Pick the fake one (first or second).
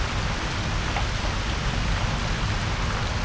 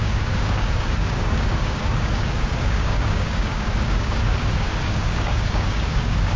second